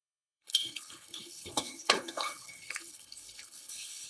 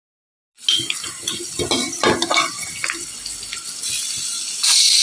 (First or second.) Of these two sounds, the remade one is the first